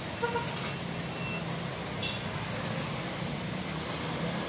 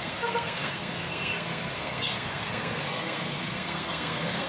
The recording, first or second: first